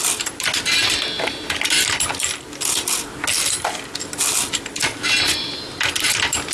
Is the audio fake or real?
real